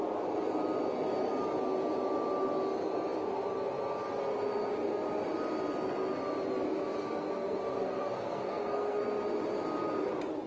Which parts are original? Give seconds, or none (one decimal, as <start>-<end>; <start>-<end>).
0.0-7.0; 9.0-10.5